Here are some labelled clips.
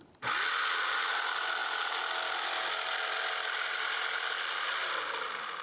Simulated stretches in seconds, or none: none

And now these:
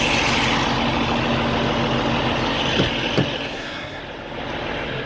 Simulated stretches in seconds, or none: 3.5-4.0 (codec, SNAC)

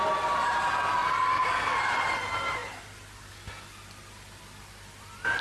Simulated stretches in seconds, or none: none

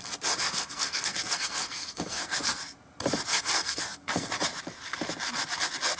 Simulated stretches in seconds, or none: 0.4-2.6 (codec, SNAC); 3.3-4.3